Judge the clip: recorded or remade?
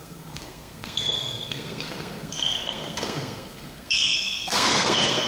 remade